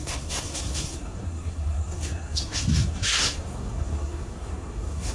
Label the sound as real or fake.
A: fake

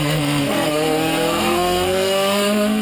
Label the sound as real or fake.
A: fake